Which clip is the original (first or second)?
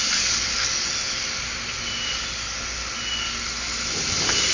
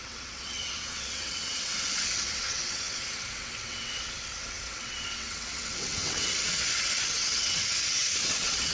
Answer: first